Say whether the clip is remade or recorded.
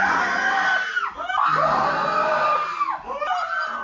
recorded